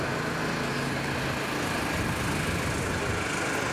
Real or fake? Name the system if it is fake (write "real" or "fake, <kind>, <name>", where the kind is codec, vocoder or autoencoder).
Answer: real